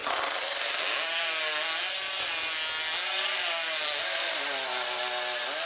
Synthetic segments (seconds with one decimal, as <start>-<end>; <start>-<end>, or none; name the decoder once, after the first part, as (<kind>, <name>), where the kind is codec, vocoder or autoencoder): none